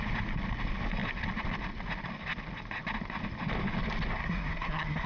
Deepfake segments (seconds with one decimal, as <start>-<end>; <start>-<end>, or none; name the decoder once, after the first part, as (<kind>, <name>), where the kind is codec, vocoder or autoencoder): 4.2-5.1 (codec, SNAC)